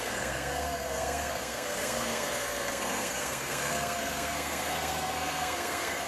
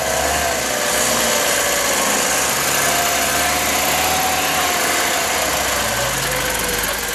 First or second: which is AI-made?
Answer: first